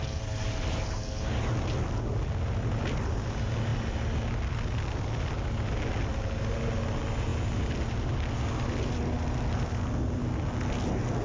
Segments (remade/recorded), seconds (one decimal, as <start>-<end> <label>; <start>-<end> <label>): 0.0-11.2 recorded